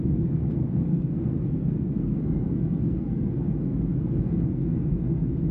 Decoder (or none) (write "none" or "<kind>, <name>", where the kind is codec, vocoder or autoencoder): codec, SNAC